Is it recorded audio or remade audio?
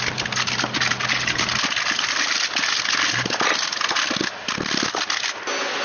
recorded